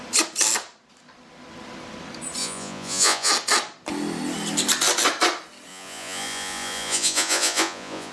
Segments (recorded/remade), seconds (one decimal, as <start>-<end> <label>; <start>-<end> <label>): 0.0-2.4 recorded; 2.4-3.3 remade; 3.3-5.7 recorded; 5.7-8.1 remade